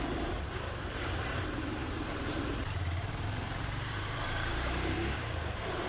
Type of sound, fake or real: fake